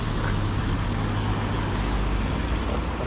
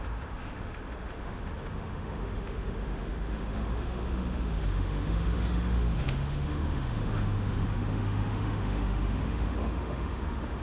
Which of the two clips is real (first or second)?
first